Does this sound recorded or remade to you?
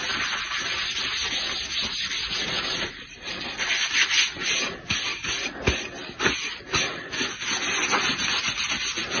recorded